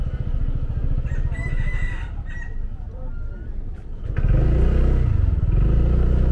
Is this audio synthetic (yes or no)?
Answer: no